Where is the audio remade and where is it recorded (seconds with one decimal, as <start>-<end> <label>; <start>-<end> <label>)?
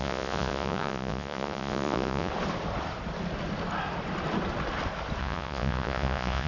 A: 0.0-2.3 remade; 2.3-5.2 recorded; 5.2-6.5 remade